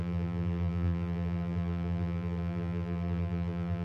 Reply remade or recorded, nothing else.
remade